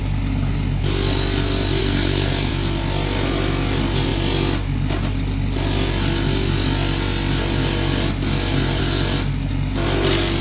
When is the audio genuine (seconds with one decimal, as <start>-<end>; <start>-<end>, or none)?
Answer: 0.0-1.8; 2.5-10.4